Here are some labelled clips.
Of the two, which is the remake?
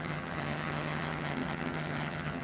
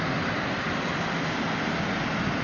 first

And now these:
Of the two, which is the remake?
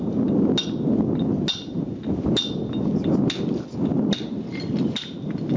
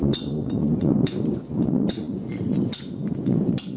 second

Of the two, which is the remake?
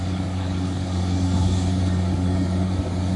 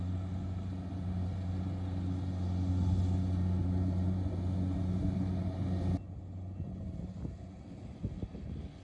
first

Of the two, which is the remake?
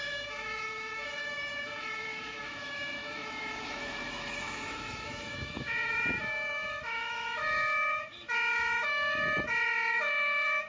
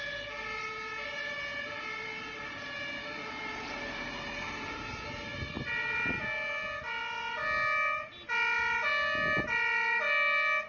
first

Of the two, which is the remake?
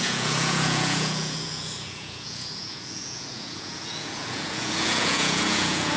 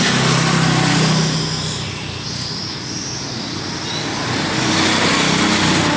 first